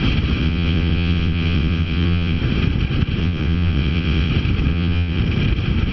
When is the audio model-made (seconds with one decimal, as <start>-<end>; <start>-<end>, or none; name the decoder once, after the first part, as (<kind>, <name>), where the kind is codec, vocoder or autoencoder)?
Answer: 0.4-2.4 (vocoder, WaveNeXt); 3.2-4.3; 4.7-5.2